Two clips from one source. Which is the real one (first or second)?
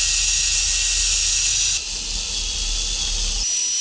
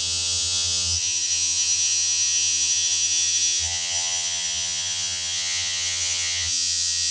first